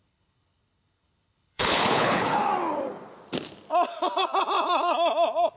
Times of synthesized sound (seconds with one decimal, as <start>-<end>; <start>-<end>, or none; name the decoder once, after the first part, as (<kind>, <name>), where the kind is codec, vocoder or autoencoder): 0.0-2.5 (codec, HILCodec)